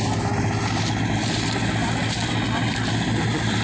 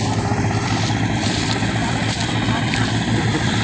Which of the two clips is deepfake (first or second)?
second